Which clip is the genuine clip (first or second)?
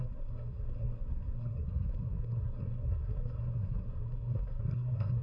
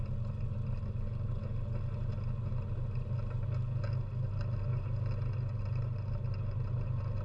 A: second